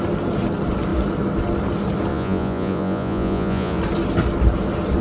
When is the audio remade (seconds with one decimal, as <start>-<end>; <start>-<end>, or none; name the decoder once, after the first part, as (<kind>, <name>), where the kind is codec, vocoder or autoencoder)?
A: 2.1-3.8 (vocoder, Vocos)